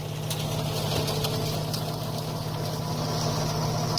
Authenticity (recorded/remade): recorded